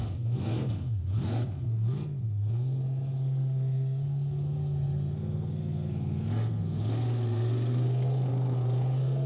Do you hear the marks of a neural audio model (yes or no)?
yes